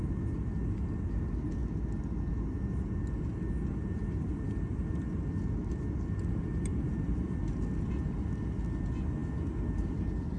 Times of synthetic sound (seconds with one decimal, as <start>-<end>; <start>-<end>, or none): 6.7-7.8